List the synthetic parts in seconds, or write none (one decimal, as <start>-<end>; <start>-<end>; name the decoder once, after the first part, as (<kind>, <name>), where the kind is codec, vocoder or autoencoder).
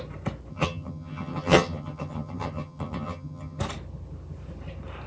0.5-3.6 (vocoder, HiFi-GAN)